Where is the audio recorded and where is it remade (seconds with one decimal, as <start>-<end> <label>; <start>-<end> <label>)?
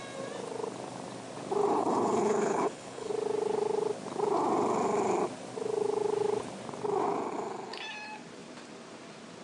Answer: 0.0-1.7 recorded; 1.7-3.1 remade; 3.1-9.4 recorded